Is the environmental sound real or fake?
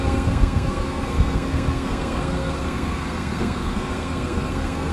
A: fake